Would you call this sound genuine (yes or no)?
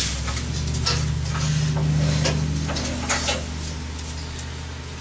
yes